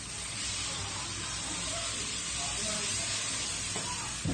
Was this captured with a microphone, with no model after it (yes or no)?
yes